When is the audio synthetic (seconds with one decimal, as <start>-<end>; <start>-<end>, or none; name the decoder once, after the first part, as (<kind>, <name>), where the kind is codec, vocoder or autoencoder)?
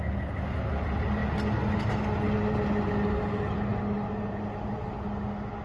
none